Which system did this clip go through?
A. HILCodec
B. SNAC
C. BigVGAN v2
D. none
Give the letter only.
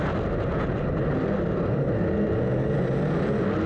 D